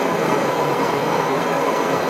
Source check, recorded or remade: remade